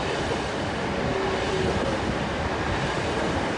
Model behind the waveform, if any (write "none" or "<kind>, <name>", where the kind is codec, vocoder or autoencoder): none